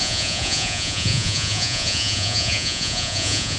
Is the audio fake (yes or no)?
yes